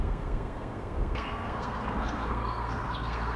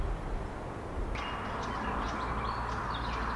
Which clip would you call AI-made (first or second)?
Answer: first